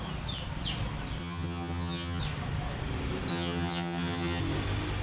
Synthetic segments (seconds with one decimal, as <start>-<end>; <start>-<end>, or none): 1.2-2.2; 3.3-4.4